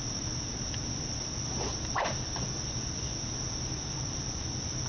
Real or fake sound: real